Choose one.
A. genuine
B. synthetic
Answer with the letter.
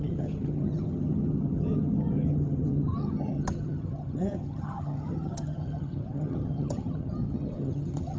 B